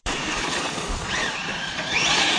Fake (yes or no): yes